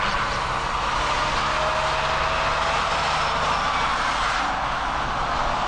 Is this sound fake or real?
real